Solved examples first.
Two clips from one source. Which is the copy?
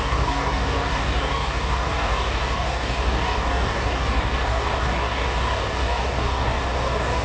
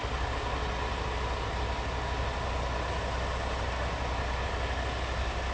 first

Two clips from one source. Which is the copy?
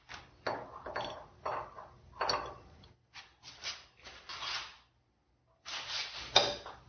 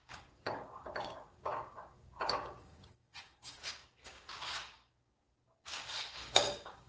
second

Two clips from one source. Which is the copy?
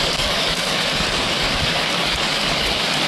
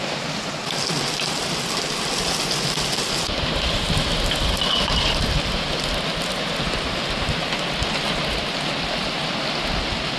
first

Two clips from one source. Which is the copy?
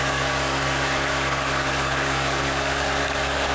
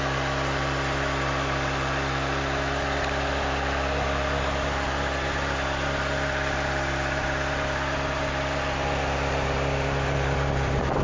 first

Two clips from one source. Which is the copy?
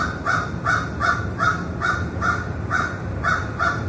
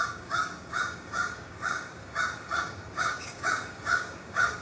second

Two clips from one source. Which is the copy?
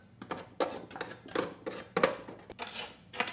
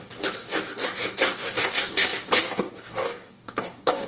second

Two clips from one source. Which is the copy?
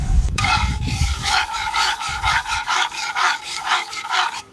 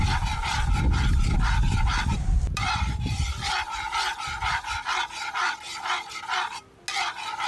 first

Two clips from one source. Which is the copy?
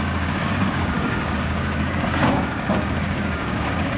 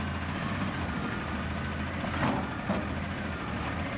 first